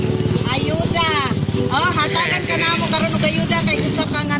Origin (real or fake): real